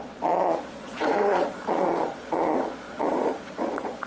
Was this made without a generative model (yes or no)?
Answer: no